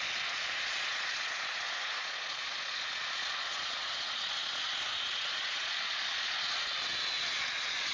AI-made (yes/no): yes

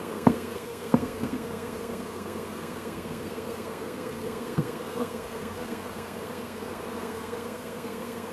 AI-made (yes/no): yes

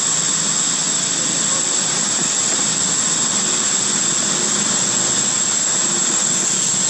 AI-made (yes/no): no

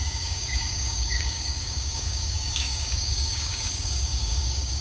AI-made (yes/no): yes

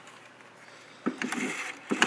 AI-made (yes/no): yes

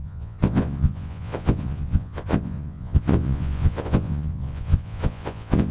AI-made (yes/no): yes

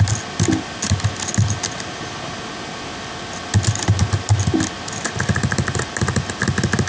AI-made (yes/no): no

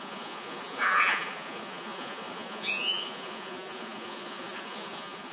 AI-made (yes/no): yes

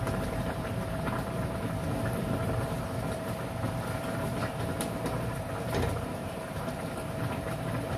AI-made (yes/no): yes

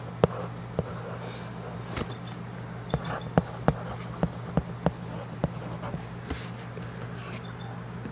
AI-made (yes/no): no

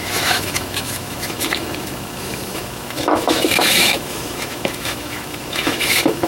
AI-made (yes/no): yes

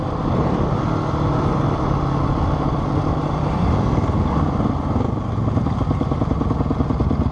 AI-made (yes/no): no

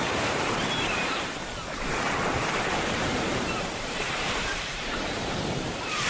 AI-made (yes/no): yes